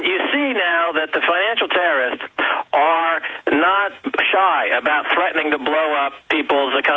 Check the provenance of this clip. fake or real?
fake